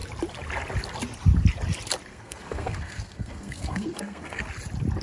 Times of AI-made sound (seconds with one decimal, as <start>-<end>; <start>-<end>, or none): 2.1-4.4